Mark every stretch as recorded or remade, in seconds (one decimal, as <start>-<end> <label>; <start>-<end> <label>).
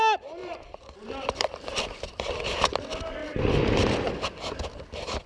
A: 0.0-0.4 recorded; 0.4-2.3 remade; 2.3-3.2 recorded; 3.2-5.3 remade